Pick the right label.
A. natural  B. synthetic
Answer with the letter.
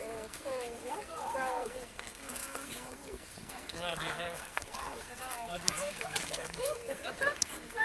B